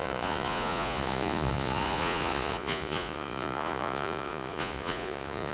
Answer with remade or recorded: remade